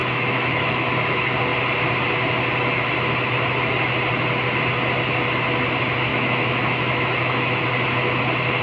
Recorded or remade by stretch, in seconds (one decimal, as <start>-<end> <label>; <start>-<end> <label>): 0.0-0.9 remade; 0.9-6.1 recorded; 6.1-7.6 remade; 7.6-8.6 recorded